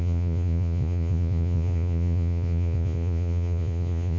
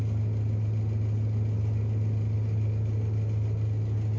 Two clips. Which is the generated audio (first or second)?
first